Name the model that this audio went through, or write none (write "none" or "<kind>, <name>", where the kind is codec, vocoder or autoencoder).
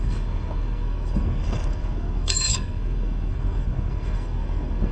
codec, SNAC